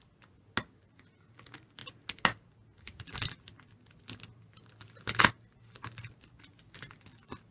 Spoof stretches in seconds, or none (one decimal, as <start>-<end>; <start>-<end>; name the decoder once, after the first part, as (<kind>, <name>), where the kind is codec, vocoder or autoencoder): none